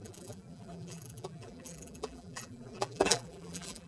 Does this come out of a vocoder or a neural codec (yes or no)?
yes